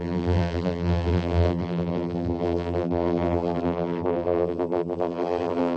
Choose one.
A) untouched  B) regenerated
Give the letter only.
B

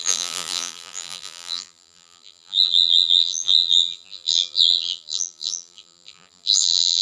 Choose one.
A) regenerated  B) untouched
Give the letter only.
A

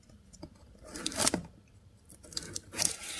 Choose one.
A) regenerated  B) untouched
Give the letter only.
A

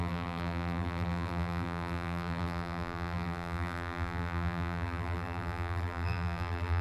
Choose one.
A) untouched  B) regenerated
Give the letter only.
B